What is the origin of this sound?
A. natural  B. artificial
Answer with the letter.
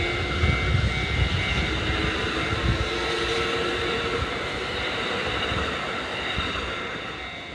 A